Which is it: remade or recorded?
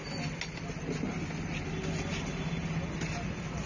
recorded